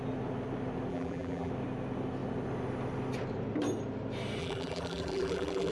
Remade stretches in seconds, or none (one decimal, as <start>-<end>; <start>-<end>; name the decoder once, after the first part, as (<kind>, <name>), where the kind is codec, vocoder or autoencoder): 0.9-1.5 (vocoder, BigVGAN v2); 4.4-5.7